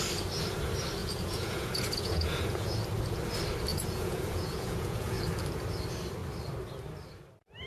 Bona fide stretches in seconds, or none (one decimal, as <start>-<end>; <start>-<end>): 0.0-1.0; 2.8-3.7; 5.2-7.7

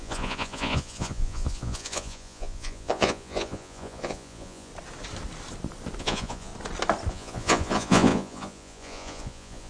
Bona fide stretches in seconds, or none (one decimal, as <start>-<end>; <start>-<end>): 4.7-6.0; 6.5-7.1

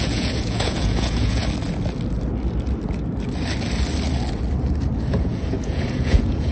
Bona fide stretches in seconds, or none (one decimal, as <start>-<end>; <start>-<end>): 1.4-5.1

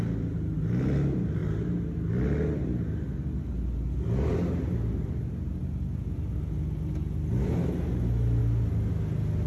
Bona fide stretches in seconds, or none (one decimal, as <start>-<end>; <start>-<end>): 0.0-9.5

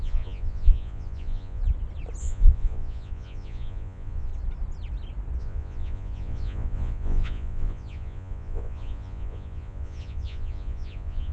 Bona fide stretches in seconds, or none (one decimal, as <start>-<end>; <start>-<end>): 1.6-2.2; 4.3-5.4